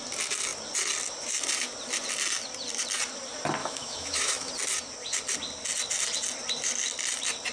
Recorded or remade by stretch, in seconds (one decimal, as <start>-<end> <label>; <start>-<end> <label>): 0.0-3.6 recorded; 3.6-4.5 remade; 4.5-7.5 recorded